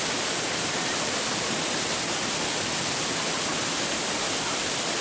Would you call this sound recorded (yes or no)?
yes